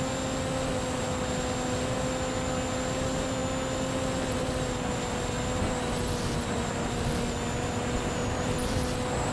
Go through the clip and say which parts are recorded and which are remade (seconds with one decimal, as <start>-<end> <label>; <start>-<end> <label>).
0.0-8.2 recorded; 8.2-8.8 remade; 8.8-9.3 recorded